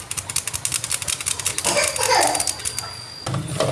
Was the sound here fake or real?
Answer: real